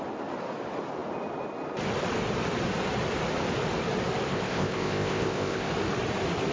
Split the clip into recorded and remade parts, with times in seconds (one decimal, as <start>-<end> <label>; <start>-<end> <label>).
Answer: 0.0-4.3 recorded; 4.3-5.7 remade; 5.7-6.5 recorded